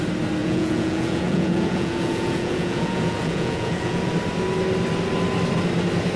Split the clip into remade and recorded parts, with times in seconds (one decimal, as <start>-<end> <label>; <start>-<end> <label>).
0.0-0.4 recorded; 0.4-4.1 remade; 4.1-6.2 recorded